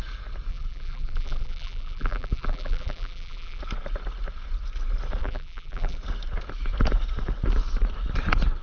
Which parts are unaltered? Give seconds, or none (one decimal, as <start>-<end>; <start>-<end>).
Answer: 0.0-0.5; 3.6-5.2; 6.0-8.6